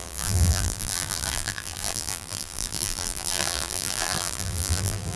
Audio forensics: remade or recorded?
remade